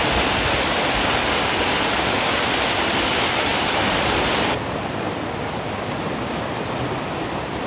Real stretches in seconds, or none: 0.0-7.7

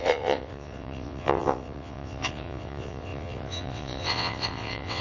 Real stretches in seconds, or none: none

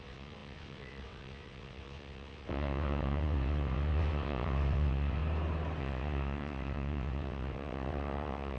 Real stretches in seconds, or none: 5.2-5.8

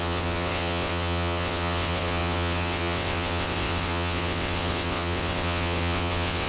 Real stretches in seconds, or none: none

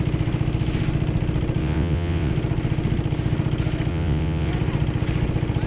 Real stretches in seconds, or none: 0.0-1.6; 2.3-3.9; 4.5-5.7

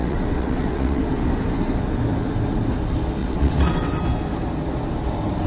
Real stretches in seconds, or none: 1.0-3.2; 4.0-5.5

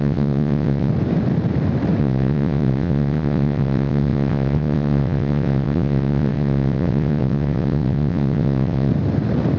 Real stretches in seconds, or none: 0.9-2.0; 8.9-9.6

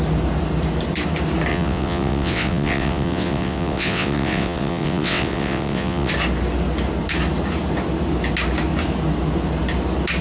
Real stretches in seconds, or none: 0.0-1.5; 6.1-10.2